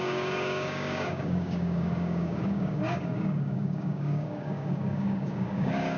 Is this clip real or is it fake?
fake